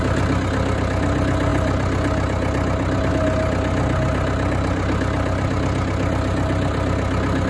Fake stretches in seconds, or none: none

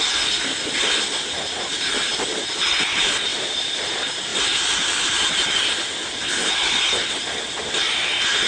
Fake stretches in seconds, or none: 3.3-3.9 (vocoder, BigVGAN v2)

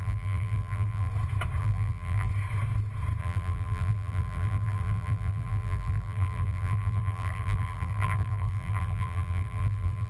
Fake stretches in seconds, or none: 0.0-1.1 (vocoder, BigVGAN v2); 1.6-2.3; 3.2-10.1

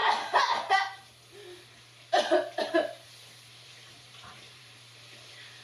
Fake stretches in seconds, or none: 3.1-5.6 (vocoder, BigVGAN v2)

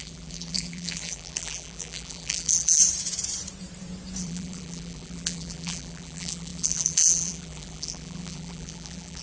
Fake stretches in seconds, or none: 0.0-2.8 (vocoder, BigVGAN v2); 4.2-9.2

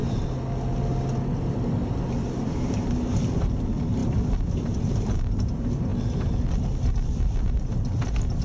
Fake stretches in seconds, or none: 2.3-4.0 (vocoder, BigVGAN v2); 4.6-5.9; 7.0-8.4

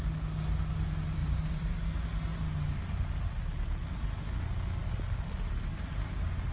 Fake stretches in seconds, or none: 1.2-1.8 (vocoder, BigVGAN v2)